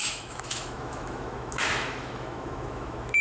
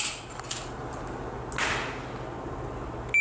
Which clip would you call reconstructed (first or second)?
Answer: first